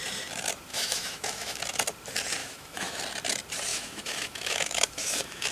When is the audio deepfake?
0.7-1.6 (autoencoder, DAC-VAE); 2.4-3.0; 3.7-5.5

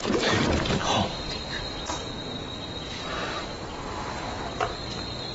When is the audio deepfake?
0.0-5.3 (vocoder, BigVGAN v2)

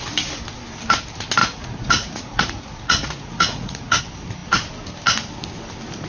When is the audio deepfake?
1.4-4.0 (vocoder, Vocos)

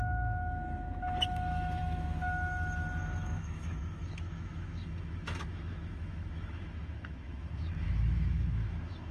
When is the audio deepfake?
0.0-9.1 (autoencoder, DAC-VAE)

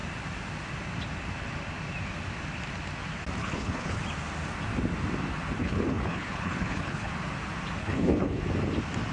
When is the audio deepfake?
3.4-4.0 (codec, HILCodec); 5.6-7.1; 7.8-8.4

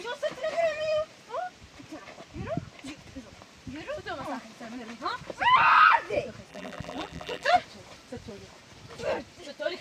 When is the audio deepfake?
6.5-7.5 (vocoder, BigVGAN v2)

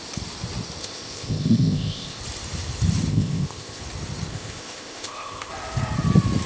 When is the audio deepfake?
0.8-2.2 (codec, ZipCodec); 3.1-3.8; 4.3-5.5